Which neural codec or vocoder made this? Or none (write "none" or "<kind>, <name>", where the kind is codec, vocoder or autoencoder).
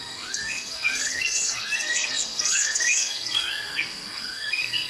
codec, SNAC